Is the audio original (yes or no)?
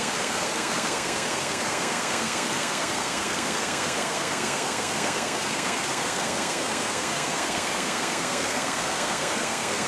no